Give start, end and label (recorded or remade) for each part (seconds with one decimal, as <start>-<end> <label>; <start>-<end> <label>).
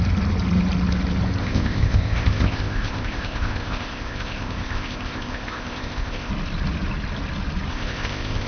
0.0-1.4 recorded; 1.4-6.3 remade; 6.3-7.7 recorded; 7.7-8.5 remade